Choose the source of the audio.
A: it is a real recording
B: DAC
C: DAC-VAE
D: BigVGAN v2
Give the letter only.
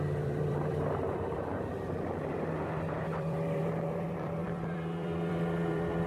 D